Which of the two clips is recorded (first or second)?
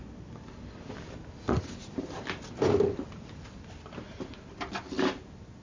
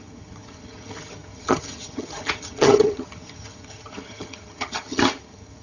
first